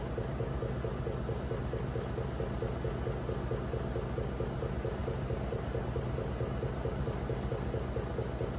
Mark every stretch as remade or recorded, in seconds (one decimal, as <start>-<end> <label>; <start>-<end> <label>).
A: 0.0-5.0 recorded; 5.0-5.8 remade; 5.8-8.6 recorded